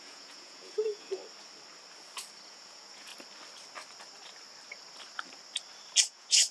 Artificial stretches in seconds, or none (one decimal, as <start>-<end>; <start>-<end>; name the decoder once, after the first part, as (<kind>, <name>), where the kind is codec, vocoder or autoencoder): 0.0-1.2 (vocoder, Vocos); 2.5-3.1; 6.0-6.5